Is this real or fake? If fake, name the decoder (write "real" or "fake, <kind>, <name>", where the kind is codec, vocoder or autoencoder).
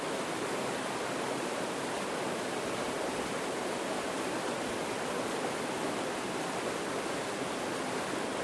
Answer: real